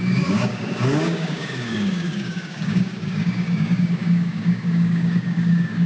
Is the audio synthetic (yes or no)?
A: yes